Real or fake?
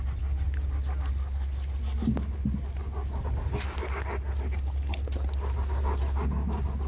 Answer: real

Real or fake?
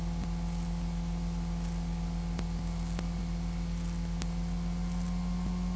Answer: real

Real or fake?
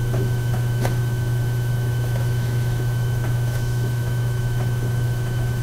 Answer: fake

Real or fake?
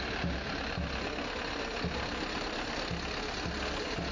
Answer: real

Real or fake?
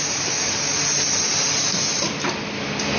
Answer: real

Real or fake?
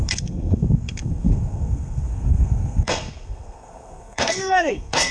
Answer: fake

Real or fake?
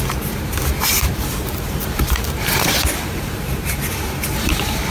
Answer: fake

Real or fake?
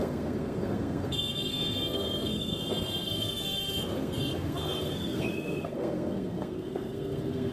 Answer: fake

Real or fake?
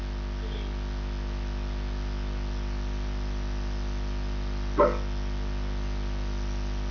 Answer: real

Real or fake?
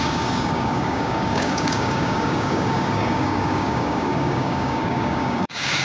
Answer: fake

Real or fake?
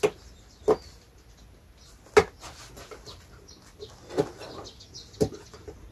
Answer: real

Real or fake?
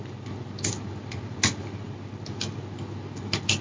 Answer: real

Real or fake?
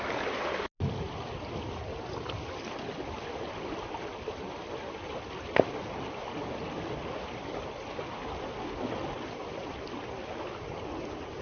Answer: real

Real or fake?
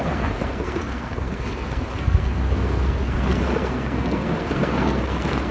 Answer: fake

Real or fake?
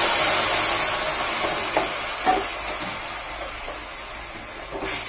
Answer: real